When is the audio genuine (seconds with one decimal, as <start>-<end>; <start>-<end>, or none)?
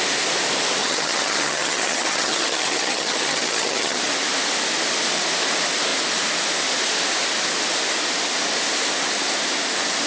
0.0-0.8; 4.0-10.1